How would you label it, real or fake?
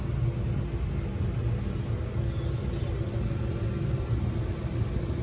real